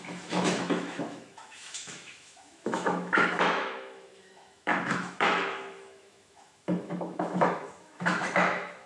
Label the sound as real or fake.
fake